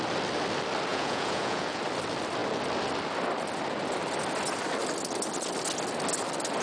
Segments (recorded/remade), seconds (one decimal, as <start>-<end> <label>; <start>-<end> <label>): 0.0-0.9 recorded; 0.9-1.8 remade; 1.8-6.6 recorded